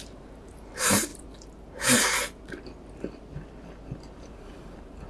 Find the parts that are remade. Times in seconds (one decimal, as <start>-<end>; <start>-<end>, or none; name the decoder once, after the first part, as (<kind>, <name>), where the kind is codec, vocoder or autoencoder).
0.0-1.1 (vocoder, BigVGAN v2); 4.2-5.1